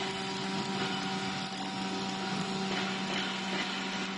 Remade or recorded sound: recorded